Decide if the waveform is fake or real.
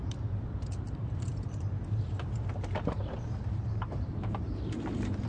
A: fake